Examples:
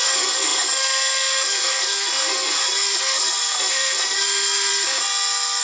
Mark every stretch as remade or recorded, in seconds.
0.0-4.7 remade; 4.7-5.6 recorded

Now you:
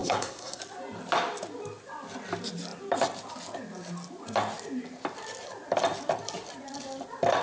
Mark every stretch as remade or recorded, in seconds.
0.0-0.6 remade; 0.6-7.4 recorded

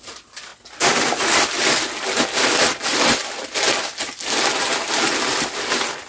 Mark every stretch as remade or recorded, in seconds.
0.0-6.1 recorded

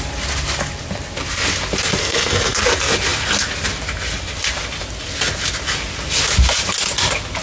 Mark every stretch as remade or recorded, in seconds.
0.0-2.0 recorded; 2.0-2.6 remade; 2.6-7.4 recorded

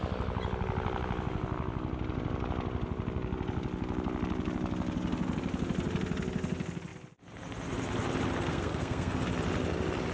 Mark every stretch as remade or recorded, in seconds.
0.0-8.5 recorded; 8.5-9.1 remade; 9.1-10.1 recorded

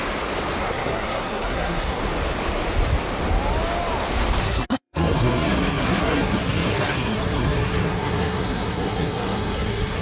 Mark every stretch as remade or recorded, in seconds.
0.0-0.6 recorded; 0.6-2.0 remade; 2.0-4.4 recorded; 4.4-10.0 remade